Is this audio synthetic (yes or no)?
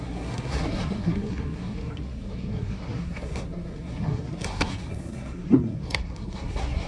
yes